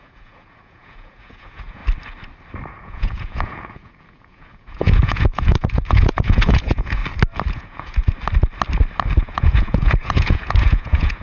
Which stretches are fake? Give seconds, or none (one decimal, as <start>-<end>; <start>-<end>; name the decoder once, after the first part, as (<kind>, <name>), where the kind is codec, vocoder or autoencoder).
0.0-1.8 (vocoder, Vocos); 2.7-7.0; 7.5-8.0; 9.2-11.2